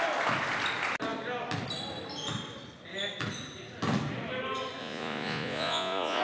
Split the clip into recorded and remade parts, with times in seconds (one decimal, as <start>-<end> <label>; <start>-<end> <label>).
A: 0.0-4.8 recorded; 4.8-6.2 remade